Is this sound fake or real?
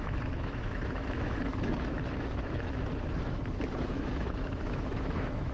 fake